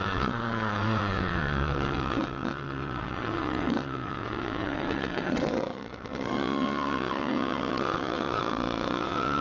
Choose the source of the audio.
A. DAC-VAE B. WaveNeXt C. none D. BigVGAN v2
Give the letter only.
B